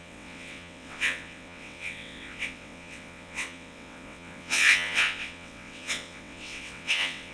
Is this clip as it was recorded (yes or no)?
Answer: no